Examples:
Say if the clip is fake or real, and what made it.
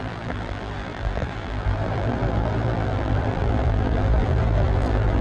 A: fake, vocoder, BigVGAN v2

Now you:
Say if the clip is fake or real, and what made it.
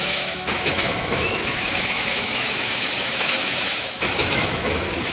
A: fake, autoencoder, DAC-VAE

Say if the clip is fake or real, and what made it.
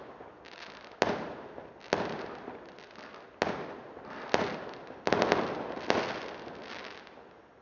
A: real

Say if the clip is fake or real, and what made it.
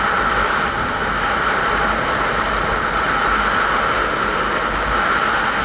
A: real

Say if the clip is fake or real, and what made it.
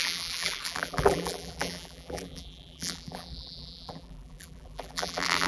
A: fake, vocoder, BigVGAN v2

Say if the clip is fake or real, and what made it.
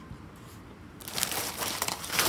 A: fake, vocoder, BigVGAN v2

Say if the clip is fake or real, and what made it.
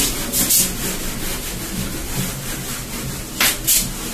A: real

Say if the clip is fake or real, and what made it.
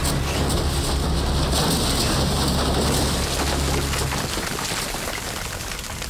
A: real